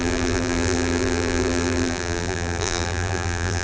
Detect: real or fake fake